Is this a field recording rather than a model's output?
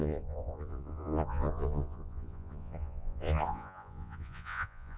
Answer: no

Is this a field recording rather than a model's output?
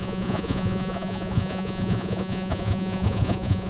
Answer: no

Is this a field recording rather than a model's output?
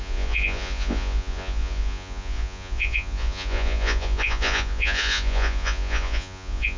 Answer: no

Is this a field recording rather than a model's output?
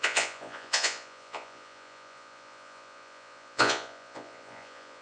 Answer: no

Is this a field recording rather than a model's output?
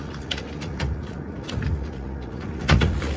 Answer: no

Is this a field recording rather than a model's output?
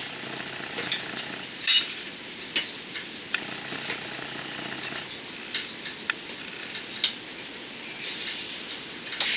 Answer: yes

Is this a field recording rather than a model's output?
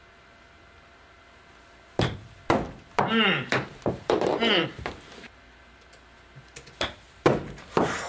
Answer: yes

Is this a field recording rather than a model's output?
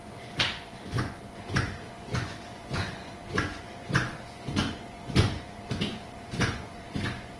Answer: no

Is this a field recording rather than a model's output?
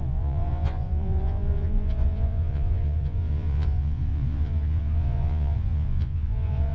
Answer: no